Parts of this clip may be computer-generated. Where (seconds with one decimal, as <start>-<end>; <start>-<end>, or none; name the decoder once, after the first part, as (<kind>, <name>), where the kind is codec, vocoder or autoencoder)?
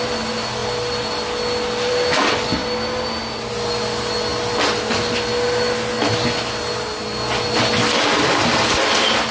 none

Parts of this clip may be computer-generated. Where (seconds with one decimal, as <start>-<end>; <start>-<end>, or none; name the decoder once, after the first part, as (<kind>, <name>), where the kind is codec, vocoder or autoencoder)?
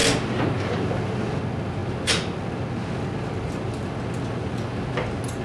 none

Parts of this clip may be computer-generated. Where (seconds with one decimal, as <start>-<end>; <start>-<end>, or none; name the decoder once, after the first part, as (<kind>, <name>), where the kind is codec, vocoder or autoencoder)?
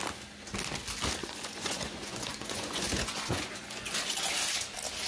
1.2-4.3 (vocoder, Vocos)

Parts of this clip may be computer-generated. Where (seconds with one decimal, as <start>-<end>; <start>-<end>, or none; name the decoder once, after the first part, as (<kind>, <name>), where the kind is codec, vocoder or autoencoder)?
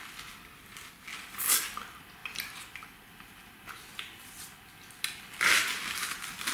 none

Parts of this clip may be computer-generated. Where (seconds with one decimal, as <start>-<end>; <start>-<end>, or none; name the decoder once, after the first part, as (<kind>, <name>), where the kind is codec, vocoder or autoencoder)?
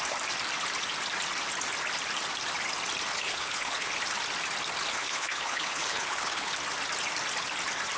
3.1-3.9 (codec, HILCodec); 4.9-6.5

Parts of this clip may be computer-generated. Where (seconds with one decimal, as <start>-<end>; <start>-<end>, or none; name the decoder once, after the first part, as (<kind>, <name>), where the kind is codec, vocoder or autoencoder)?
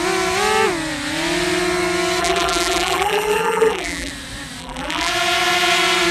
2.2-4.1 (vocoder, BigVGAN v2); 4.6-5.1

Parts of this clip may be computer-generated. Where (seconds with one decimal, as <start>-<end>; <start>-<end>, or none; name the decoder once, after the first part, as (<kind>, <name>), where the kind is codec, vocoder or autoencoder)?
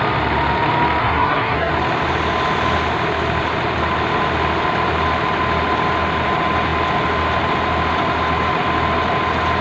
1.0-1.7 (codec, SNAC)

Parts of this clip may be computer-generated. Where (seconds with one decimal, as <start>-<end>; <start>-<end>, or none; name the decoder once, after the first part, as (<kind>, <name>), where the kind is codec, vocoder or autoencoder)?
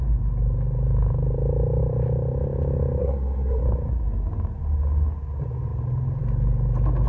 3.0-3.6 (codec, SNAC)